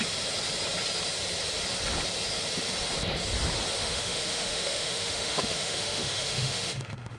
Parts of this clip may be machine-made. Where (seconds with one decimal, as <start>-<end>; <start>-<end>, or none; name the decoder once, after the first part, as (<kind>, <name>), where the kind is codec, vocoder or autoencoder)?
3.7-7.2 (autoencoder, DAC-VAE)